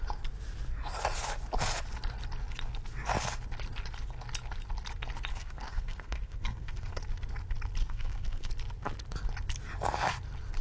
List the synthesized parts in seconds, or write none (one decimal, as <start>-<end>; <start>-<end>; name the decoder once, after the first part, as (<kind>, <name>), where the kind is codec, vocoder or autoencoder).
5.3-7.0 (codec, SNAC); 7.8-8.5